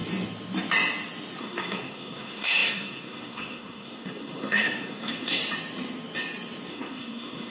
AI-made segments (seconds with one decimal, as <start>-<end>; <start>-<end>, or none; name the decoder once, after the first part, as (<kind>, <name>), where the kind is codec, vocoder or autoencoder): 1.4-5.4 (codec, SNAC); 6.7-7.5